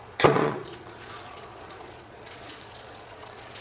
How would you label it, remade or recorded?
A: remade